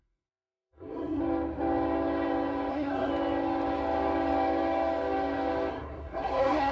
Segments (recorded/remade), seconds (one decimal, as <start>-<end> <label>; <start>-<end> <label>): 0.0-1.2 remade; 1.2-2.7 recorded; 2.7-3.1 remade; 3.1-5.7 recorded; 5.7-6.7 remade